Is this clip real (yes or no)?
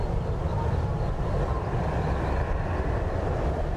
yes